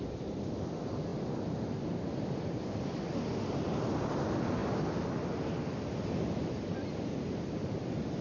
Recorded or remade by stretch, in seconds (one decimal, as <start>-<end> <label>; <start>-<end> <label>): 0.0-8.2 recorded